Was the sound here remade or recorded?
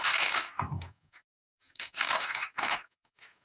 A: remade